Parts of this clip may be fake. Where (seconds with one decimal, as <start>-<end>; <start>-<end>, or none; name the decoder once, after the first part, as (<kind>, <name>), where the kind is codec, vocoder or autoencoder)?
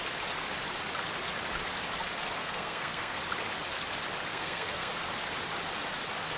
2.4-3.2 (codec, SNAC); 4.3-4.9